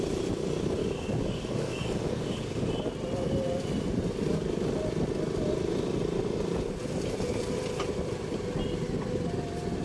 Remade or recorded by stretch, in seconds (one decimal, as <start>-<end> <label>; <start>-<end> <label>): 0.0-0.8 recorded; 0.8-2.7 remade; 2.7-9.8 recorded